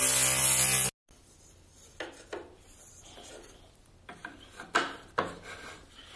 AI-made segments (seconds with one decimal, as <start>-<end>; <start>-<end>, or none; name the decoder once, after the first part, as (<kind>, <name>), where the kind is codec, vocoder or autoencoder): none